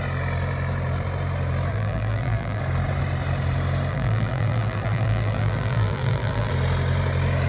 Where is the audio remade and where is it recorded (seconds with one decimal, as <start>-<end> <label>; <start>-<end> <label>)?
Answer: 0.0-1.7 recorded; 1.7-2.6 remade; 2.6-3.9 recorded; 3.9-6.5 remade; 6.5-7.5 recorded